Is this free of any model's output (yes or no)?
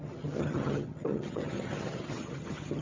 no